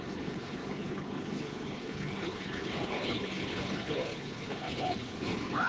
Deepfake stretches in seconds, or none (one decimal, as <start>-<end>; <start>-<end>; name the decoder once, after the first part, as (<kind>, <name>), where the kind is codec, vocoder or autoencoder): 0.0-5.7 (codec, HILCodec)